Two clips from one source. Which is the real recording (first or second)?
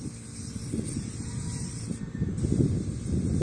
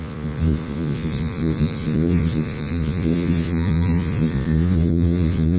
first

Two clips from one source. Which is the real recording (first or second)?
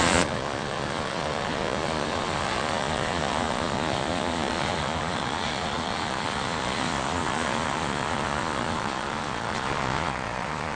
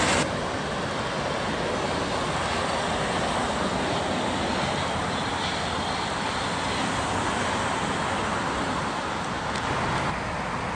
second